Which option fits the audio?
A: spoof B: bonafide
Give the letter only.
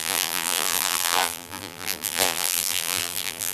A